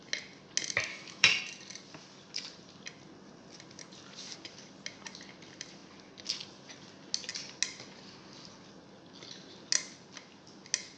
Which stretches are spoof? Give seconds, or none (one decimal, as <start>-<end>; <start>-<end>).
0.9-1.4